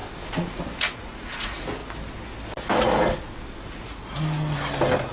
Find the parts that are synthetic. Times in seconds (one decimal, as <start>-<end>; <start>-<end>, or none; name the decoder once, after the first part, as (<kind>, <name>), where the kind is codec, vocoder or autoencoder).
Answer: 0.8-1.8 (vocoder, Vocos); 3.6-4.0